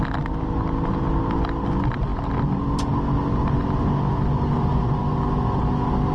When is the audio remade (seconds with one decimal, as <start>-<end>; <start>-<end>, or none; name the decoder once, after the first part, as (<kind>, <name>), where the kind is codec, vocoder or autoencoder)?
none